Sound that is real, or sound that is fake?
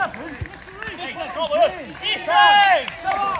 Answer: real